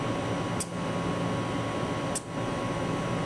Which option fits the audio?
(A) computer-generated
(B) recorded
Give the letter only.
B